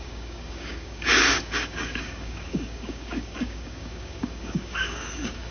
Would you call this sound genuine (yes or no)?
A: no